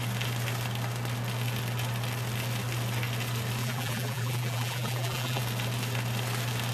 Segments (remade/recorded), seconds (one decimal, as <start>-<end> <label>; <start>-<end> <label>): 0.0-3.6 recorded; 3.6-5.4 remade; 5.4-6.7 recorded